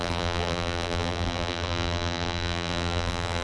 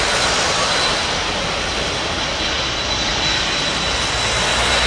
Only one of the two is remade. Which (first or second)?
first